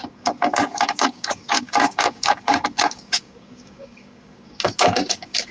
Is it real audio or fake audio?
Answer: fake